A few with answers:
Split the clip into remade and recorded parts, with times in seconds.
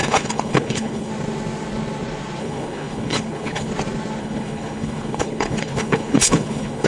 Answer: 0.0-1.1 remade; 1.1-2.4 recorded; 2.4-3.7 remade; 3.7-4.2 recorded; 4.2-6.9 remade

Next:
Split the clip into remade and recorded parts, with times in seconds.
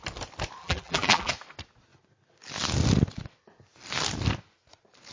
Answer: 0.0-0.6 recorded; 0.6-1.3 remade; 1.3-5.1 recorded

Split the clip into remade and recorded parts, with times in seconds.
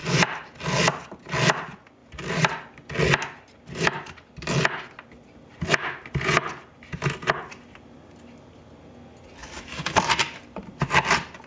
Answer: 0.0-0.5 remade; 0.5-2.0 recorded; 2.0-3.0 remade; 3.0-9.4 recorded; 9.4-10.9 remade; 10.9-11.5 recorded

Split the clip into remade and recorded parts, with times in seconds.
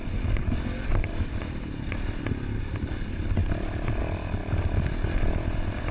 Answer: 0.0-1.1 recorded; 1.1-2.2 remade; 2.2-3.4 recorded; 3.4-4.0 remade; 4.0-4.4 recorded; 4.4-5.2 remade; 5.2-5.9 recorded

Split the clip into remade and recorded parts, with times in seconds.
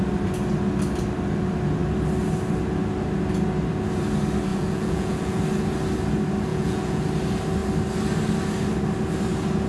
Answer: 0.0-4.5 recorded; 4.5-5.4 remade; 5.4-6.5 recorded; 6.5-7.0 remade; 7.0-9.7 recorded